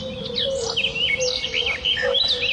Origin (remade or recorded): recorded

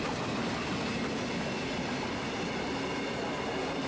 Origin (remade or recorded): recorded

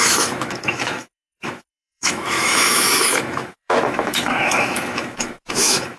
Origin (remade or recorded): remade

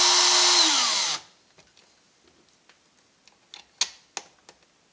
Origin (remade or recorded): recorded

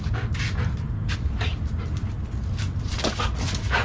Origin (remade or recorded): recorded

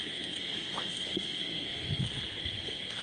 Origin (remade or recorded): remade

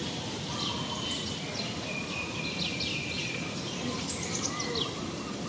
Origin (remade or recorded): recorded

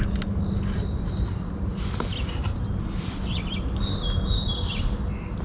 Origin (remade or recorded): recorded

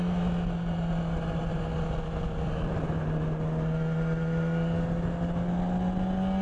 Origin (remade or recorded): recorded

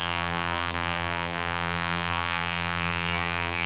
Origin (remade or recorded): remade